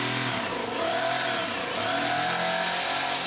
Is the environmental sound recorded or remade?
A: recorded